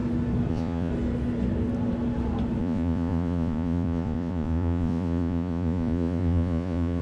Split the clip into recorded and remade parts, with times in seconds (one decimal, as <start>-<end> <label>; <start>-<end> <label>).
0.0-0.5 recorded; 0.5-0.9 remade; 0.9-2.6 recorded; 2.6-7.0 remade